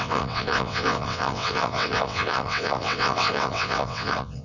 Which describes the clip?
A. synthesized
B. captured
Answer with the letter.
A